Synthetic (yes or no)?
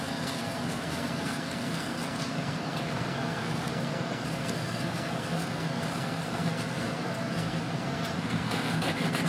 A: yes